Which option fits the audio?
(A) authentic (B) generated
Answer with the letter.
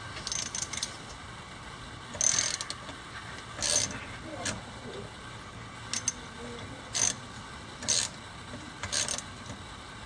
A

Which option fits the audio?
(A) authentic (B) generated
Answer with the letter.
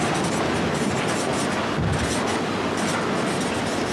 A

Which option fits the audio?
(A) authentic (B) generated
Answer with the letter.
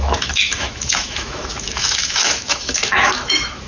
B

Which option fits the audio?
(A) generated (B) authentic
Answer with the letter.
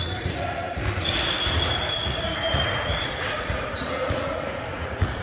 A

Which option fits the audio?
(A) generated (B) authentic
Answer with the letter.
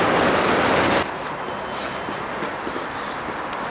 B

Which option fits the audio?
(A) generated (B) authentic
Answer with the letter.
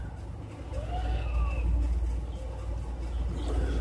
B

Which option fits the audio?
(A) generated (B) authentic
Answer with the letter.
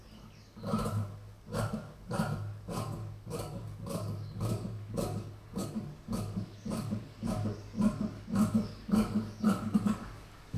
A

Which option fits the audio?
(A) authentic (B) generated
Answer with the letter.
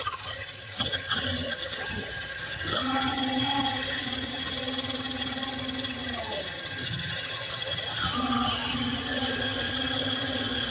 B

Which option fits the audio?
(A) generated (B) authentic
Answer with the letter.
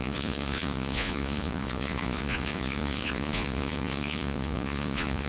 A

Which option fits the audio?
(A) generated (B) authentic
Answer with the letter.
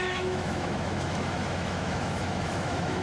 A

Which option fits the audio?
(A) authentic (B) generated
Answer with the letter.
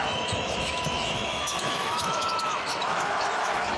B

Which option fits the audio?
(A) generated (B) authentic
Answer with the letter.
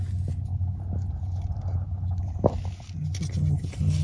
B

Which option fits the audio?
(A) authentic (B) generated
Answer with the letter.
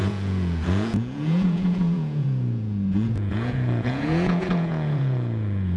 B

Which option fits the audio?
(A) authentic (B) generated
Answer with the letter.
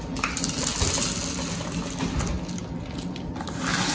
A